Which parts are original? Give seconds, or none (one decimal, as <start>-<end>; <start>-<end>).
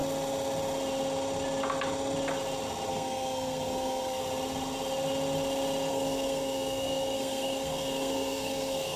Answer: 0.0-2.9; 4.2-5.9